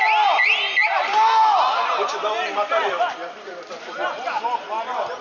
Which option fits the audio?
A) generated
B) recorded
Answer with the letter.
B